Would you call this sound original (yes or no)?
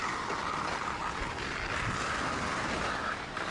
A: yes